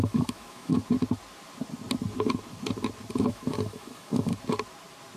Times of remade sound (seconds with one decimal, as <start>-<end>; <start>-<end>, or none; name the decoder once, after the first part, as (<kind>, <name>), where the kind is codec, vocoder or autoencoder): 0.0-0.8 (autoencoder, DAC-VAE); 3.2-4.3